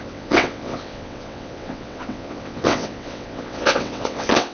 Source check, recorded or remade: remade